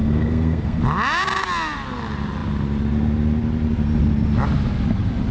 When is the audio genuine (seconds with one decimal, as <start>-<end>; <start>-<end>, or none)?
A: 0.8-5.3